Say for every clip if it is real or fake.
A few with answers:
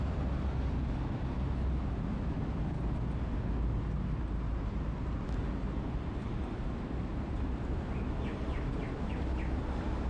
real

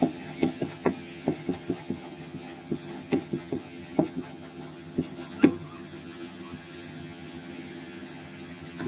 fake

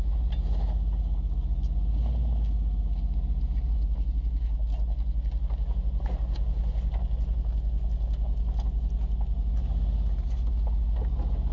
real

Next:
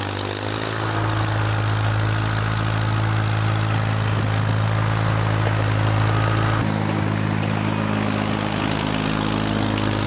real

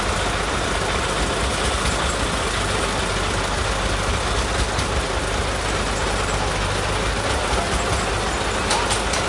real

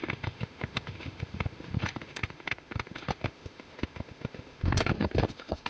fake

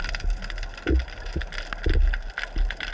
real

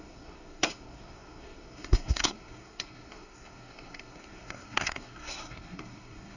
fake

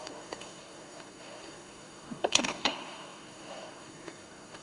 fake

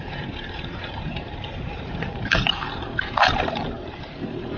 fake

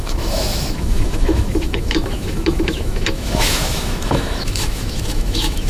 fake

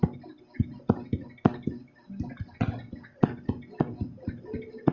real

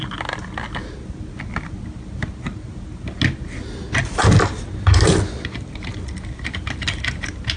real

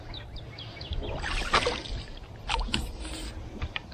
real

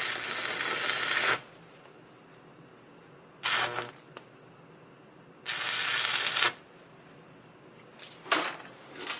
real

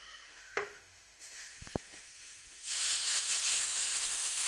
fake